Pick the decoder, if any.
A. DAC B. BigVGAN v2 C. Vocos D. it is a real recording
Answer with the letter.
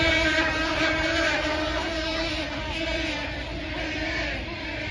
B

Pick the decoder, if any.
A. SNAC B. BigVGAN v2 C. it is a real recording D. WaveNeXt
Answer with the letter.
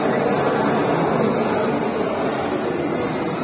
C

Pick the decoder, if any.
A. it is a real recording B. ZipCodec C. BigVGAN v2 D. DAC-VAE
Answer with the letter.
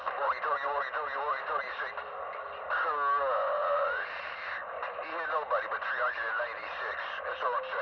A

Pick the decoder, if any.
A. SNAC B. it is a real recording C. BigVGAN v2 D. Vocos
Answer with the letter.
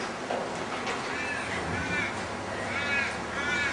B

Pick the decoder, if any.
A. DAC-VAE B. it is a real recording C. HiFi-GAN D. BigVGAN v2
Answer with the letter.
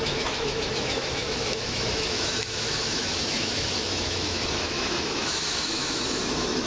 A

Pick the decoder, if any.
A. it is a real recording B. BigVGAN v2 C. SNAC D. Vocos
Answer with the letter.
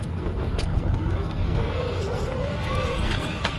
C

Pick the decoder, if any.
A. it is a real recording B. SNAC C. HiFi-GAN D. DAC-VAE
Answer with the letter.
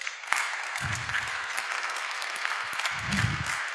B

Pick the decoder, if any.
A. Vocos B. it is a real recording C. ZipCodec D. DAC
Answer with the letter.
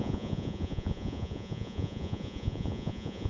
A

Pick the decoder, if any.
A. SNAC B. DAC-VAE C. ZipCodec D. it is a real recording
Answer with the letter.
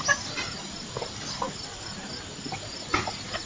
D